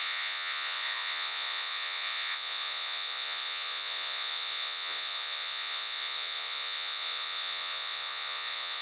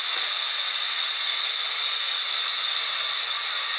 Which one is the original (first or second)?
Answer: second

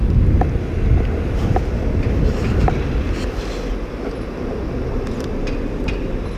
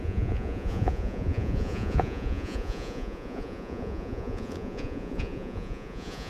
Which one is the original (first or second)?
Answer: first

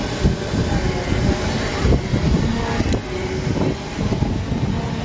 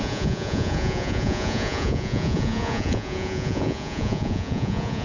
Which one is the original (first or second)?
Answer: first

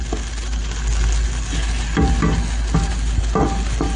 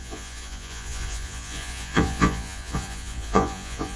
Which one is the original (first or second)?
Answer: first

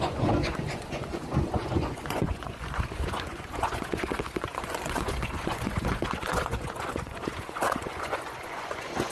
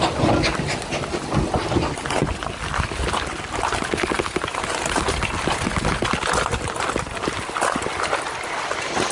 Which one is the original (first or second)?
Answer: second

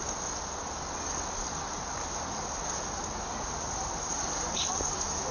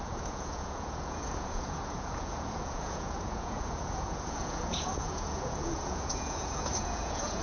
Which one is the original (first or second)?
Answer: first